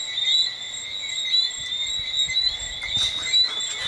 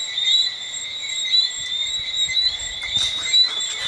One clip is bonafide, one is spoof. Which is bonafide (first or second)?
first